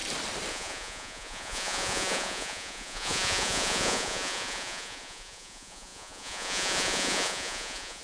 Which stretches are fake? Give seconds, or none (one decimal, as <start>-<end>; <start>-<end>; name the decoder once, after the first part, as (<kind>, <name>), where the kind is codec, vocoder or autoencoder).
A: 0.5-8.0 (vocoder, Vocos)